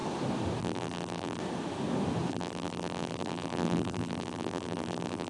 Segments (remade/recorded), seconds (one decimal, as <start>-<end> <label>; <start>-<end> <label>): 0.0-0.6 recorded; 0.6-1.4 remade; 1.4-2.3 recorded; 2.3-5.3 remade